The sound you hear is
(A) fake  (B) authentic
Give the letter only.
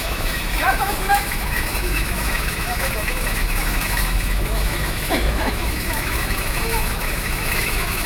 A